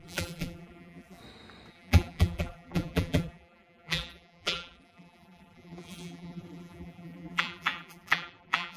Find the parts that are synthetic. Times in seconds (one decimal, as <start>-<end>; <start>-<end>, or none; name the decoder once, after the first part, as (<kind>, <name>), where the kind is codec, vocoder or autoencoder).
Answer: 0.0-1.2 (vocoder, BigVGAN v2); 1.7-8.8